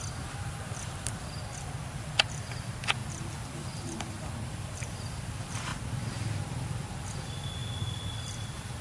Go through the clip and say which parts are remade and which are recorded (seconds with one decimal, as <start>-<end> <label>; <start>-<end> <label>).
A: 0.0-5.7 remade; 5.7-6.4 recorded; 6.4-7.6 remade; 7.6-8.2 recorded; 8.2-8.8 remade